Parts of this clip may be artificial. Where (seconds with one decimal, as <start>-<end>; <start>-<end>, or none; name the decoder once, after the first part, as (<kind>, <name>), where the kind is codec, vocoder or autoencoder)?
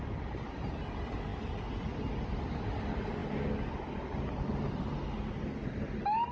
none